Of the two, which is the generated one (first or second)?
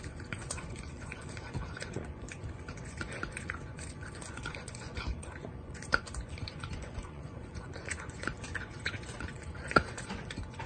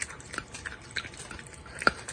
first